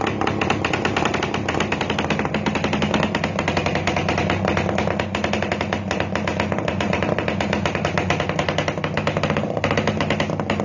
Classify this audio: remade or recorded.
recorded